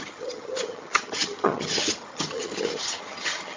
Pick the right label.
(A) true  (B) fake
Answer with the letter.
B